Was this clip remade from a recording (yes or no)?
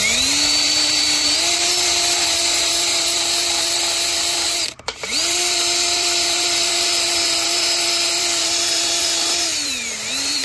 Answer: yes